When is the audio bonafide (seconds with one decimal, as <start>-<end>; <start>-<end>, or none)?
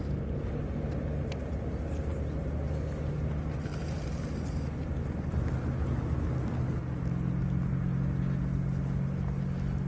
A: 0.0-9.9